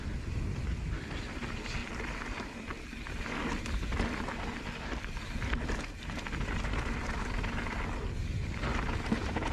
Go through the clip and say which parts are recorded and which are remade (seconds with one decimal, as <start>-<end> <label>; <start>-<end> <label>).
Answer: 0.0-9.5 recorded